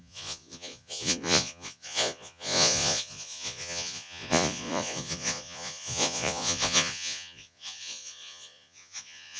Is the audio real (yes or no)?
no